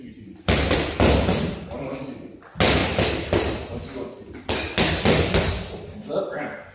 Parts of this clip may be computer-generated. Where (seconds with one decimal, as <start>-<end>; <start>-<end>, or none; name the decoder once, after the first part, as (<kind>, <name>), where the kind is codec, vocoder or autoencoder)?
none

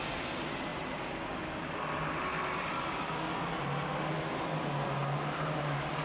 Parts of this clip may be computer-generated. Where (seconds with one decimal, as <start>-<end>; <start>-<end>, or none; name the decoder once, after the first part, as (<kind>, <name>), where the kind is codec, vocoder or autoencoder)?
none

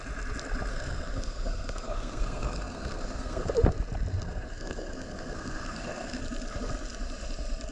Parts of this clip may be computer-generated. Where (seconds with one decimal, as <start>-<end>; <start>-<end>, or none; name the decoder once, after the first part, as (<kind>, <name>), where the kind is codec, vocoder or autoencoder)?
0.7-3.5 (codec, SNAC); 4.1-6.2

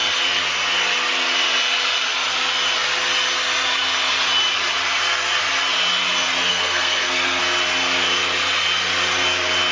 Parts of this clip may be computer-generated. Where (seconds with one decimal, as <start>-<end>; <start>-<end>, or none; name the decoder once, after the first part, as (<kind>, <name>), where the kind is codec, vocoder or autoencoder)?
6.5-7.4 (codec, SNAC)